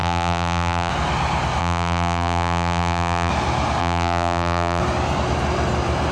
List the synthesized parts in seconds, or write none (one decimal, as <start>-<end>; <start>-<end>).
0.0-0.9; 1.6-3.3; 3.8-4.8